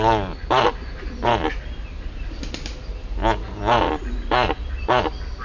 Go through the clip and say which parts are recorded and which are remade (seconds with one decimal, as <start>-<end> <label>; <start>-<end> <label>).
0.0-5.4 recorded